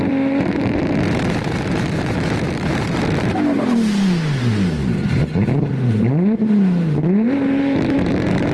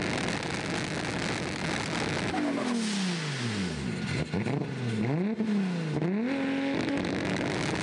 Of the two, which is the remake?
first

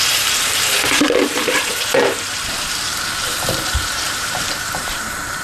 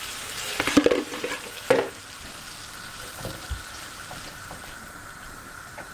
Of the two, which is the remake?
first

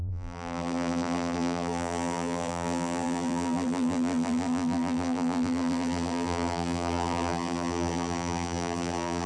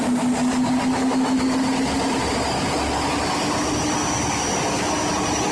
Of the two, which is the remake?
first